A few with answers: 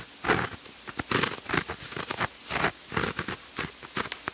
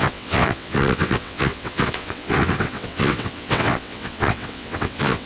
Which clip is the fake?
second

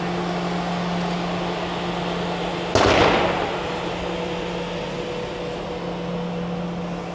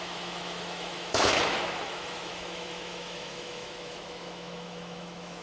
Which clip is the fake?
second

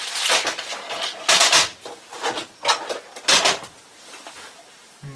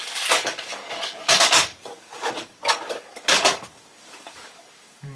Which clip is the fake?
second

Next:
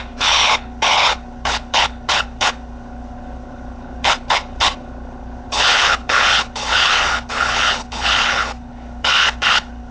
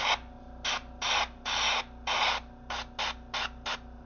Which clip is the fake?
first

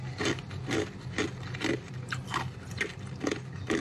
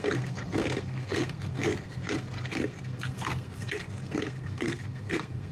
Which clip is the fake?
second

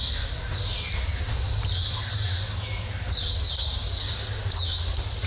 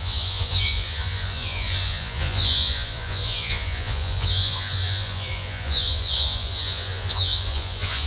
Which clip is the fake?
second